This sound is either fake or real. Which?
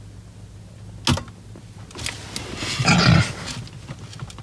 real